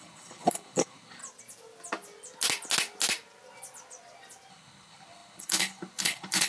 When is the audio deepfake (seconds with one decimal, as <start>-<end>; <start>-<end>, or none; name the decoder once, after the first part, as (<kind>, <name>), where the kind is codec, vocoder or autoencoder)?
0.0-1.2 (codec, HILCodec); 4.5-6.5